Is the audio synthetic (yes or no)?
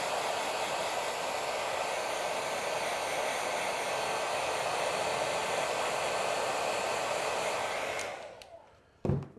no